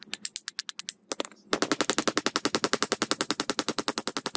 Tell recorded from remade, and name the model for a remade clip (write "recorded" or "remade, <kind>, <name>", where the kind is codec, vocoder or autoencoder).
recorded